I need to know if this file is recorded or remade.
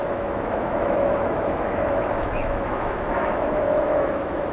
remade